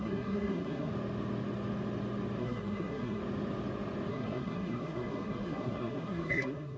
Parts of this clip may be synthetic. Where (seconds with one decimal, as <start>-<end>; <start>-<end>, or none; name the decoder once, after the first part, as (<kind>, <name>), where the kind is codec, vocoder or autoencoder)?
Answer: 0.0-0.9 (codec, SNAC); 2.4-3.2; 4.1-6.8